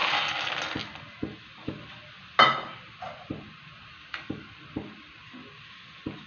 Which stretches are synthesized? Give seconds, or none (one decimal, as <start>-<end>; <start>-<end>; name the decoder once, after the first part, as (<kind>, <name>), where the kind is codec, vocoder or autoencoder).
3.9-4.5 (codec, DAC)